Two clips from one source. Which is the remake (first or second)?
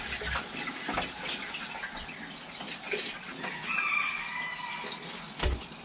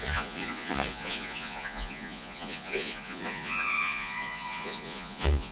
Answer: second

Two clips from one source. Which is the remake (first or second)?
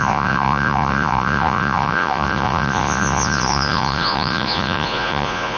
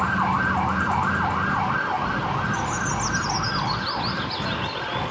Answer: first